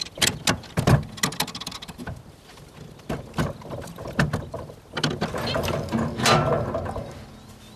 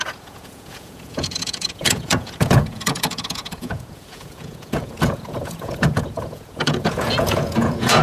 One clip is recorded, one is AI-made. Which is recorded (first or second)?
first